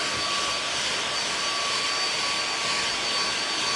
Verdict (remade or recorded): recorded